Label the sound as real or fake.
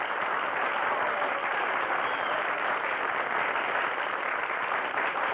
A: real